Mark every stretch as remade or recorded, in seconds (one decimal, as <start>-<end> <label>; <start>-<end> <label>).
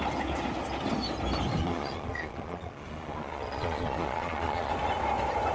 0.0-1.6 recorded; 1.6-4.7 remade; 4.7-5.5 recorded